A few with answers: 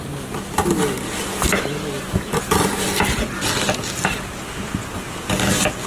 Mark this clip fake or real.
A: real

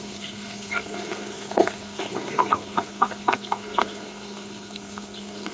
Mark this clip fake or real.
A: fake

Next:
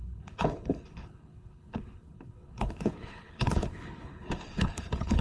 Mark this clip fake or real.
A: fake